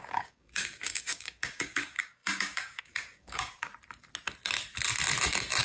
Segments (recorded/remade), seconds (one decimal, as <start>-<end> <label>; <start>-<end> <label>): 0.0-3.7 remade; 3.7-5.6 recorded